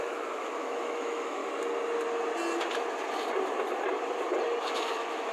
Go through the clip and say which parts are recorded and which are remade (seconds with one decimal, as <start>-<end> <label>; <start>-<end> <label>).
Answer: 0.0-1.4 remade; 1.4-4.6 recorded; 4.6-5.3 remade

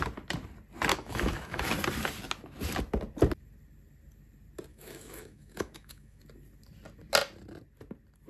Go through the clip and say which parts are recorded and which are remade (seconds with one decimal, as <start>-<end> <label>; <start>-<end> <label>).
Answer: 0.0-0.9 recorded; 0.9-1.7 remade; 1.7-4.7 recorded; 4.7-6.2 remade; 6.2-8.3 recorded

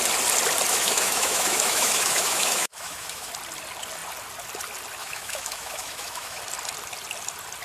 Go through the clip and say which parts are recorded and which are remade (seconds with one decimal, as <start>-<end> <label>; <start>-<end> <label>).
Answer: 0.0-0.7 recorded; 0.7-3.3 remade; 3.3-5.0 recorded; 5.0-6.4 remade; 6.4-7.6 recorded

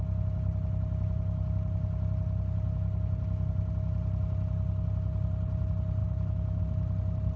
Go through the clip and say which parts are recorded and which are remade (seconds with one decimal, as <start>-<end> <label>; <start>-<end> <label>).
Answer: 0.0-6.0 recorded; 6.0-6.6 remade; 6.6-7.4 recorded

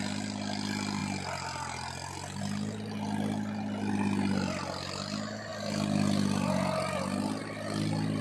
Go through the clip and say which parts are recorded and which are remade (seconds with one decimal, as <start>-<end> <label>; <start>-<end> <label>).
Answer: 0.0-8.2 recorded